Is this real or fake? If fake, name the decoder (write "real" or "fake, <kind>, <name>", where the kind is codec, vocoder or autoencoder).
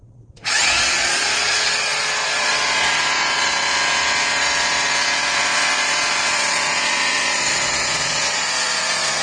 fake, vocoder, Vocos